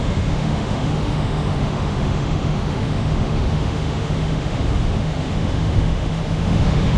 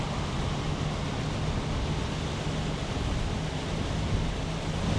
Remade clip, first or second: first